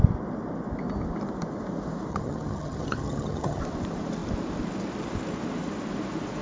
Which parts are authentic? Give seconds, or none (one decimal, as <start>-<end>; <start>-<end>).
0.0-2.1; 3.6-6.4